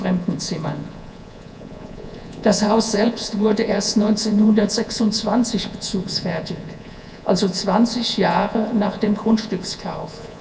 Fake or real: fake